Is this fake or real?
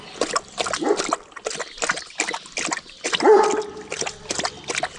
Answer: real